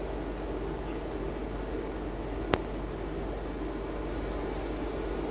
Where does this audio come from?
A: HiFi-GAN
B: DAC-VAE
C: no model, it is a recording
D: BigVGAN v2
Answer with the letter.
C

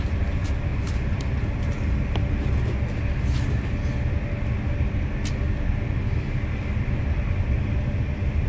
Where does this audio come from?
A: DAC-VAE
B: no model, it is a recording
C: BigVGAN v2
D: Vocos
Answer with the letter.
B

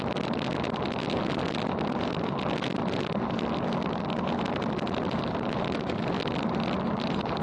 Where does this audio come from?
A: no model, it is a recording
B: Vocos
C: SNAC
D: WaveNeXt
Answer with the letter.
A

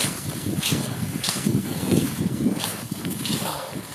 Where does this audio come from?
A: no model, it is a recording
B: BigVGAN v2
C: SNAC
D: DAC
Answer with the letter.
C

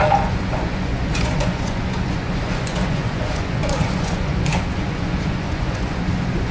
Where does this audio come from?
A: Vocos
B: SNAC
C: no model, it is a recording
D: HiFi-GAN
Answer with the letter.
A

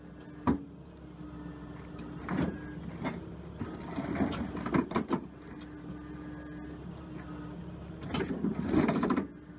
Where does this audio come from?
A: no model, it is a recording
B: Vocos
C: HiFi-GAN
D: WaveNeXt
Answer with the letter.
A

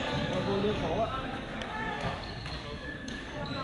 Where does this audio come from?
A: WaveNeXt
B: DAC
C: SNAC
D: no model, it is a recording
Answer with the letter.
B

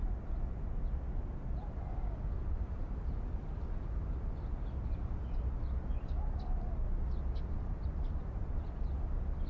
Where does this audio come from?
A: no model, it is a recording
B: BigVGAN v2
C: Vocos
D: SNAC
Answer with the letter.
A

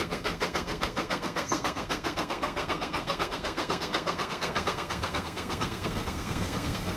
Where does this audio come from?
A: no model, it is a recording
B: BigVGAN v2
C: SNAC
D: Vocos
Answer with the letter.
C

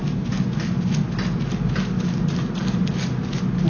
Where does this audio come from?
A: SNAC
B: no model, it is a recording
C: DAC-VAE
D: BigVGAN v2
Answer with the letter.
B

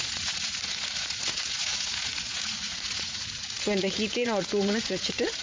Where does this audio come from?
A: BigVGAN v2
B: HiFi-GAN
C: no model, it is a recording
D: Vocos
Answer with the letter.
D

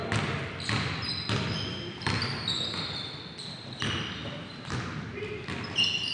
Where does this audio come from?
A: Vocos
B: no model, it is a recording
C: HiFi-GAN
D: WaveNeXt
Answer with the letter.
B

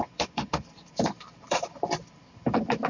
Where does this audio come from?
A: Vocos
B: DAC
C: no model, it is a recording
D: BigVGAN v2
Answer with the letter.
D